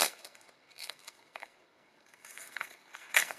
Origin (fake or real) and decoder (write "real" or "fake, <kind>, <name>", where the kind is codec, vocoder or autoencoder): fake, codec, SNAC